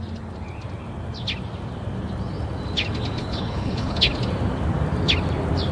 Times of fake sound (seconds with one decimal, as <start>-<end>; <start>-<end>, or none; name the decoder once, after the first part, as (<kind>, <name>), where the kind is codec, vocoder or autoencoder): 3.2-4.1 (codec, HILCodec)